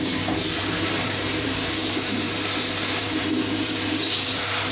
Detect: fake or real fake